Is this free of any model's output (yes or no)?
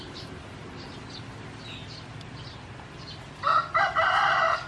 yes